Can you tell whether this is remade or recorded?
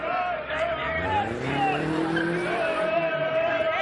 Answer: remade